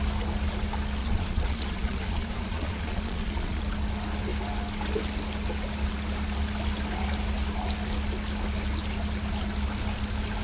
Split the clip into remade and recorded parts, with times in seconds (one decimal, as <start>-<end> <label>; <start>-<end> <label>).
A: 0.0-1.0 recorded; 1.0-3.6 remade; 3.6-10.4 recorded